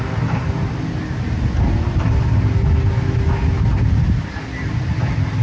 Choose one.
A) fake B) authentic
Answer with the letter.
B